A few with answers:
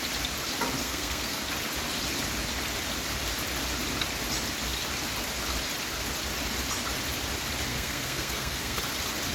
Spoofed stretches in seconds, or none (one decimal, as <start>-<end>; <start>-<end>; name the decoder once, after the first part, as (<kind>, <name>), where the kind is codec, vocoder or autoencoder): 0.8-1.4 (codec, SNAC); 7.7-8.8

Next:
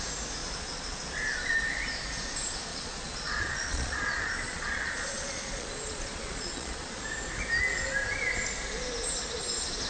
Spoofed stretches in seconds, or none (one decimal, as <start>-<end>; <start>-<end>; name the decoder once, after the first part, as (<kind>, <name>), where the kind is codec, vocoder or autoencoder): 0.4-1.0 (vocoder, Vocos); 2.7-7.0

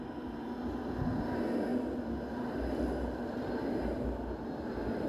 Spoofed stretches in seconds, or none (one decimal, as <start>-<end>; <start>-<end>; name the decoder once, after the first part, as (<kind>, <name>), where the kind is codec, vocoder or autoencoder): none

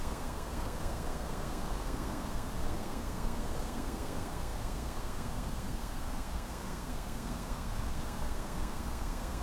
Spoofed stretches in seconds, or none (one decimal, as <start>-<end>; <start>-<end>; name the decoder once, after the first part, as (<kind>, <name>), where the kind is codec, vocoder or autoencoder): 0.0-9.4 (codec, SNAC)

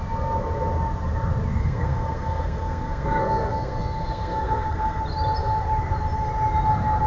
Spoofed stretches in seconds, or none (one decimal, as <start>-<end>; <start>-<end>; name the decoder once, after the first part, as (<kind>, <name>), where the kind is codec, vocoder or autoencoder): 1.6-5.0 (codec, SNAC)